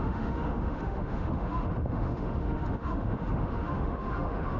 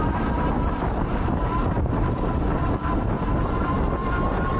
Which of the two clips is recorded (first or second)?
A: second